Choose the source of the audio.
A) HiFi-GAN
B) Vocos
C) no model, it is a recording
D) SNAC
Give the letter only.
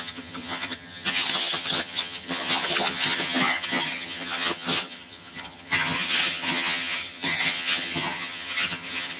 A